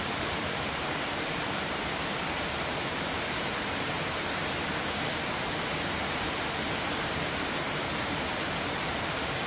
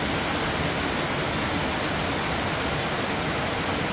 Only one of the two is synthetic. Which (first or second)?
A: first